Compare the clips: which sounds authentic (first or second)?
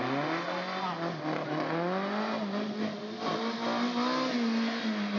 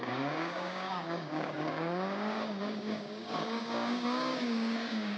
first